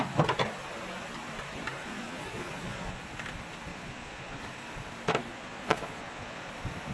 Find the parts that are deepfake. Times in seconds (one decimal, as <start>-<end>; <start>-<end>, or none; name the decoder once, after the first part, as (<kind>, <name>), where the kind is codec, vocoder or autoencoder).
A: 1.8-3.0 (vocoder, Vocos); 3.7-4.4; 5.3-6.5